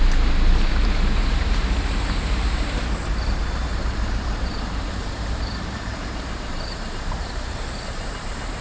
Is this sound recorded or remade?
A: remade